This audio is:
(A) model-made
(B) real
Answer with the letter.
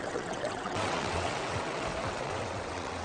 A